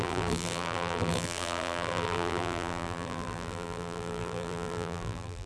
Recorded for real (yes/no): no